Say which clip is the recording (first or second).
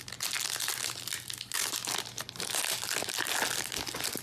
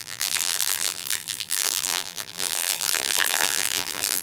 first